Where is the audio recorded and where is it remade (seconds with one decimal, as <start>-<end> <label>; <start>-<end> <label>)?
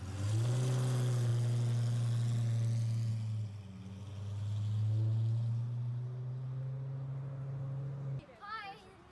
0.0-9.1 recorded